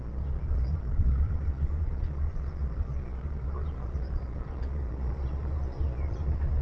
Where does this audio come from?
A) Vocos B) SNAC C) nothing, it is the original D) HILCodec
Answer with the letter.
A